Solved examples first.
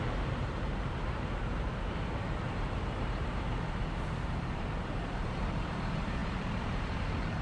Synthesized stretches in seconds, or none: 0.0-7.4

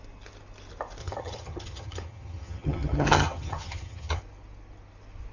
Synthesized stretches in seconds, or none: 1.0-4.2

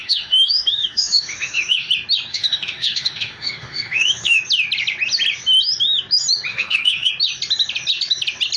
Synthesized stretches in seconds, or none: 0.0-1.9; 2.3-4.4; 6.5-7.1

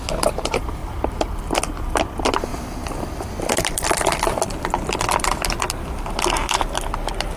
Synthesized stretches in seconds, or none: 0.8-1.4; 2.5-6.0

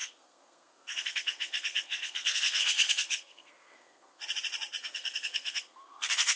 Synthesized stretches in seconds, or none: 0.0-4.2; 4.8-6.4

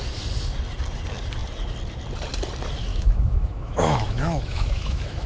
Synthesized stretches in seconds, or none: 2.9-5.3